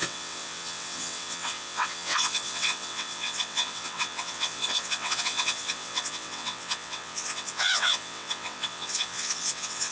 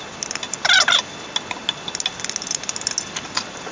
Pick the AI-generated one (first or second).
first